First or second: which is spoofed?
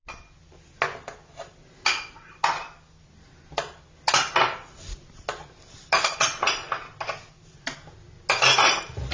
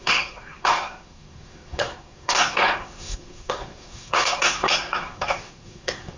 second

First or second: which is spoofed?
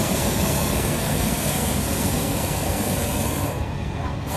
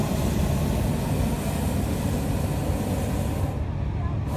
first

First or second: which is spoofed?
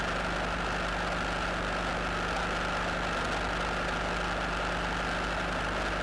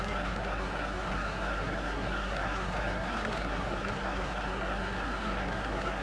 second